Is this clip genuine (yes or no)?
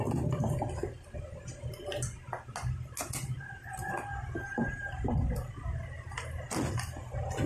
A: yes